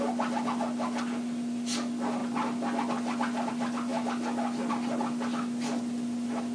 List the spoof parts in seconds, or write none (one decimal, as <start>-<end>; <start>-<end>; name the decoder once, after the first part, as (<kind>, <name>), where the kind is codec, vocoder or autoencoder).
none